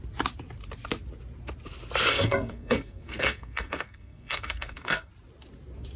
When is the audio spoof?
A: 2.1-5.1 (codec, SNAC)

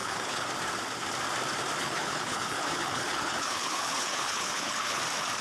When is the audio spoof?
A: 0.0-0.5 (codec, HILCodec); 1.8-5.0